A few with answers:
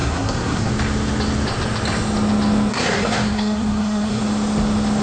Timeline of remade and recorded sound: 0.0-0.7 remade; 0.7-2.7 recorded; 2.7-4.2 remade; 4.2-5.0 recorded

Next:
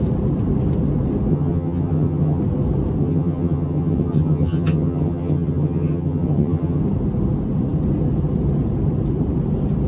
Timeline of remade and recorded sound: 0.0-1.3 recorded; 1.3-2.4 remade; 2.4-3.0 recorded; 3.0-6.8 remade; 6.8-9.9 recorded